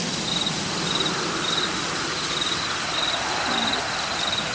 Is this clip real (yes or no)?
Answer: yes